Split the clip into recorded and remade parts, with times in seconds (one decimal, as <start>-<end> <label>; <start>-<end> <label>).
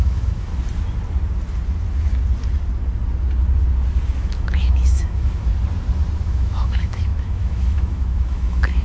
0.0-0.5 remade; 0.5-4.2 recorded; 4.2-5.5 remade; 5.5-6.2 recorded; 6.2-8.8 remade